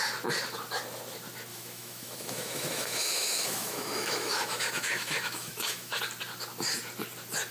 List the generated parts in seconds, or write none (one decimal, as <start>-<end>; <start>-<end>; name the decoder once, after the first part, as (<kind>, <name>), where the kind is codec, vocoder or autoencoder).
1.5-6.0 (autoencoder, DAC-VAE)